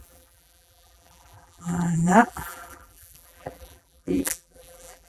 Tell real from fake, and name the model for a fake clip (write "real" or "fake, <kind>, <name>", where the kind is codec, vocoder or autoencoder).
fake, vocoder, BigVGAN v2